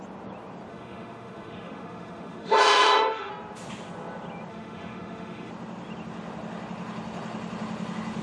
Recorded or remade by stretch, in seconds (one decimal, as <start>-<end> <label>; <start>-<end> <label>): 0.0-0.7 recorded; 0.7-3.3 remade; 3.3-4.5 recorded; 4.5-5.5 remade; 5.5-8.2 recorded